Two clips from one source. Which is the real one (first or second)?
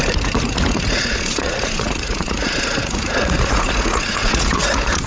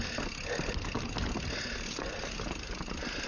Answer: second